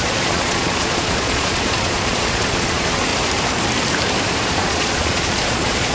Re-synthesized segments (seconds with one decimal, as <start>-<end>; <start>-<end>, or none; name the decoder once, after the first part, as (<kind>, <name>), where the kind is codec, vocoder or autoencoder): 0.0-3.1 (vocoder, Vocos); 4.5-5.9